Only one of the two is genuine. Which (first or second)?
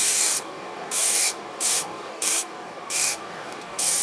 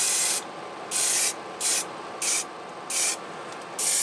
second